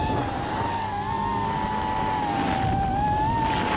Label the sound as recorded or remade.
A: recorded